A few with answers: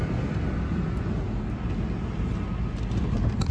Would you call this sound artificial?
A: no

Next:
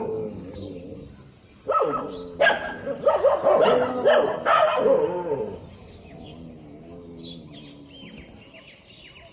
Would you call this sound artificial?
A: no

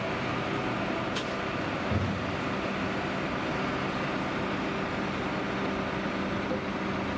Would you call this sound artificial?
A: no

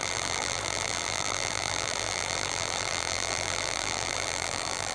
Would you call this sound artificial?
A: yes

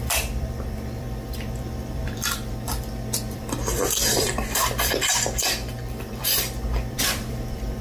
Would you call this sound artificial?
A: yes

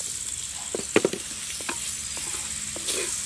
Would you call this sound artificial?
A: no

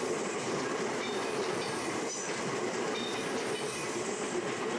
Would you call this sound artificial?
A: no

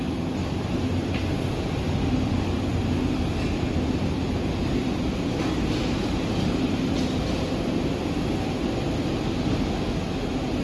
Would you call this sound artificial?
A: no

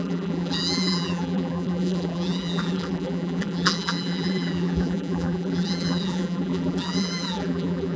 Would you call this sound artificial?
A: yes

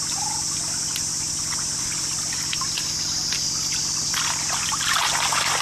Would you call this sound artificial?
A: yes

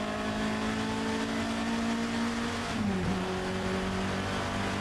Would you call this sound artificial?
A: no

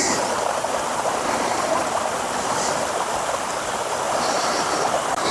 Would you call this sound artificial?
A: yes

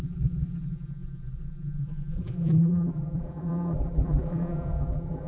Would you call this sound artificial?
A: yes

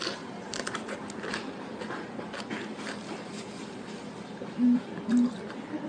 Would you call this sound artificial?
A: yes